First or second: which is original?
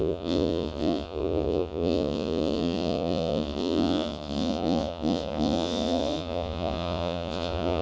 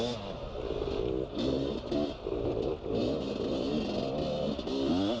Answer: second